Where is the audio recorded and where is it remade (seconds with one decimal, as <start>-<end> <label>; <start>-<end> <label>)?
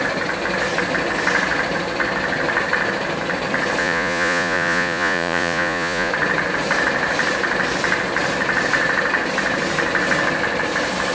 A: 0.0-3.8 recorded; 3.8-6.1 remade; 6.1-11.1 recorded